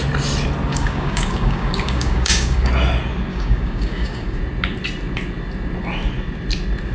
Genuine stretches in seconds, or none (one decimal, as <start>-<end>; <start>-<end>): 0.0-0.7; 2.7-3.3; 4.4-6.9